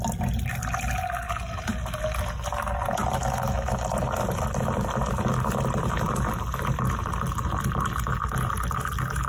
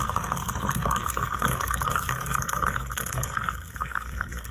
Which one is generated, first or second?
second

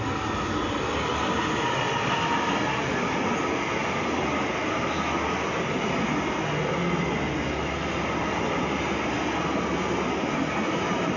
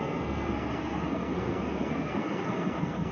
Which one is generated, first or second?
second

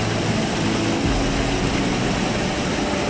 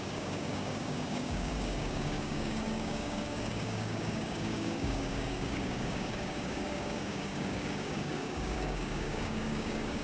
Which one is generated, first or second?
second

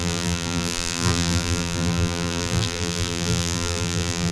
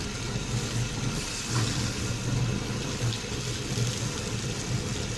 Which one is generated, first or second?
first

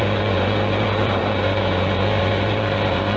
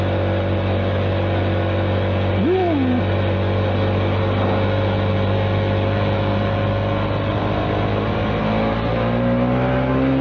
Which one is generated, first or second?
first